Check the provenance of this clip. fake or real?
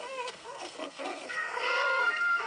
fake